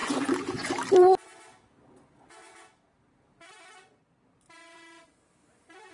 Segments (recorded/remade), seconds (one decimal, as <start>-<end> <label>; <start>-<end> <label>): 0.0-0.7 remade; 0.7-5.9 recorded